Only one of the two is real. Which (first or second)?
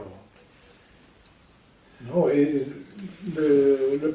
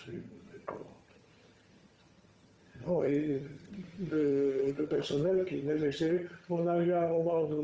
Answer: first